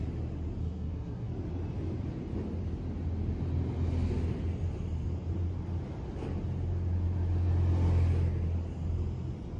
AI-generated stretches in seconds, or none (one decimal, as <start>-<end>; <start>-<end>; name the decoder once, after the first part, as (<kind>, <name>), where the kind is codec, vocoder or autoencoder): 0.6-1.3 (codec, SNAC)